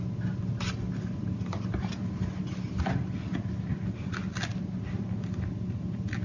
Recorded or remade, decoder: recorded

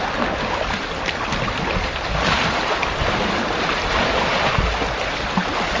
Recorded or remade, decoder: recorded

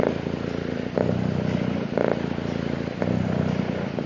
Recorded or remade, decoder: recorded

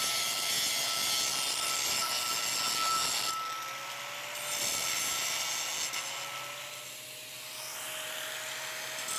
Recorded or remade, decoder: recorded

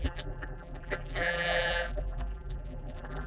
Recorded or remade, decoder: remade, vocoder, BigVGAN v2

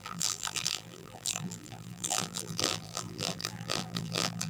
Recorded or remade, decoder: remade, vocoder, BigVGAN v2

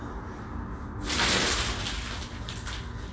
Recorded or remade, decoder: recorded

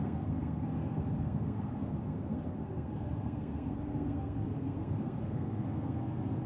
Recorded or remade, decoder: remade, codec, SNAC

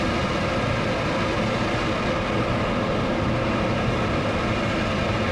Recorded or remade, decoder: recorded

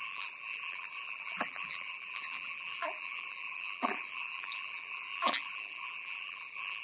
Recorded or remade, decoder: remade, vocoder, BigVGAN v2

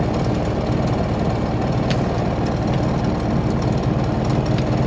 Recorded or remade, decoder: recorded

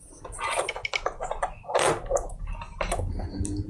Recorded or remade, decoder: recorded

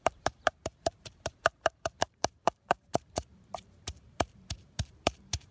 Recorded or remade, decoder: remade, vocoder, BigVGAN v2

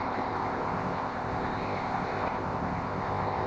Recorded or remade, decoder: remade, codec, ZipCodec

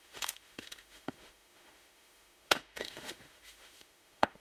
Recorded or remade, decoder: remade, autoencoder, DAC-VAE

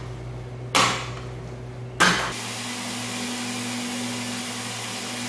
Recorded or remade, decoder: recorded